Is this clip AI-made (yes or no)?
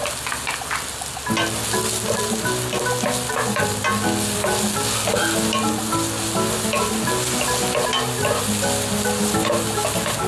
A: no